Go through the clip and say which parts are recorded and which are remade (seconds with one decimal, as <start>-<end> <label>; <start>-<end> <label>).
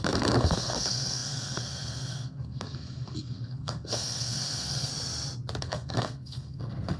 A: 0.0-4.9 remade; 4.9-5.6 recorded; 5.6-7.0 remade